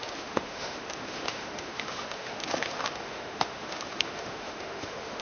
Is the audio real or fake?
fake